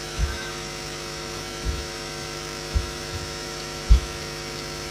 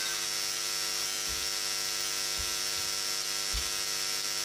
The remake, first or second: first